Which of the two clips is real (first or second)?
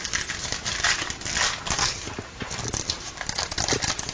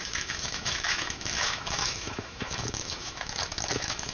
first